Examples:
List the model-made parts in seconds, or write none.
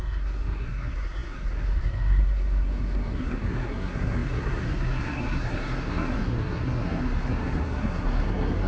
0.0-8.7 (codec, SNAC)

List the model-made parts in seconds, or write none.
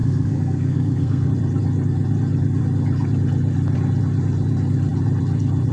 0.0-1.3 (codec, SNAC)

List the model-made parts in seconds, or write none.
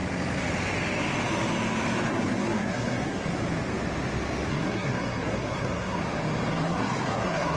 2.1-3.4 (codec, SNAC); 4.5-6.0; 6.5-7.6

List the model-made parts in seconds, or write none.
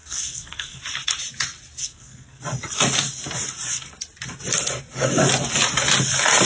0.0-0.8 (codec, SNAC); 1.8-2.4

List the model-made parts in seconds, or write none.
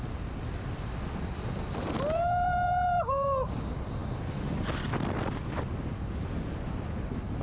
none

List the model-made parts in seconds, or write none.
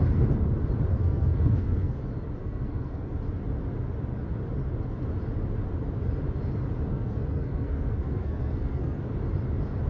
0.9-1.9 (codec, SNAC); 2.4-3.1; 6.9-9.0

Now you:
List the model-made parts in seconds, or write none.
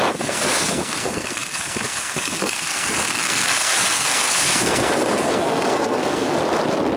0.0-6.4 (codec, SNAC)